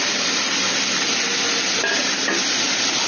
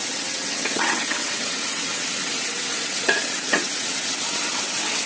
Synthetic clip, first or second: second